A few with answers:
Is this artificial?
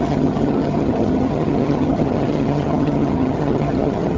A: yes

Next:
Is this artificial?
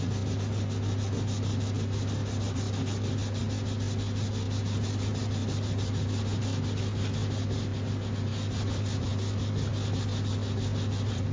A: no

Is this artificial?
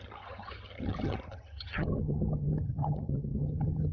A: yes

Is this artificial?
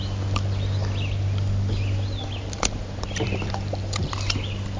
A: no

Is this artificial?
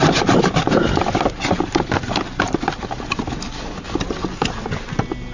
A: no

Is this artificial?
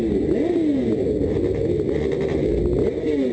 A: no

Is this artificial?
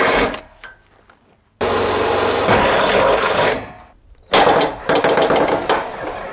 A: no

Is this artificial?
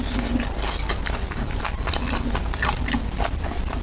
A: no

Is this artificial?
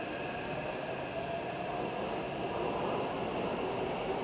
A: no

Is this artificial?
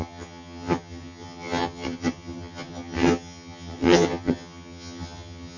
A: yes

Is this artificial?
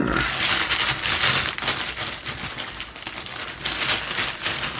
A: no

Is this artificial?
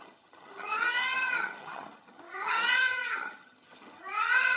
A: yes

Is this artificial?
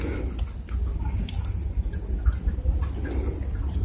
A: no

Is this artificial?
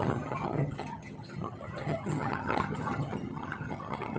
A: yes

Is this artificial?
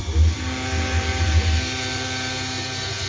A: no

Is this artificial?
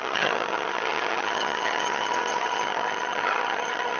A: yes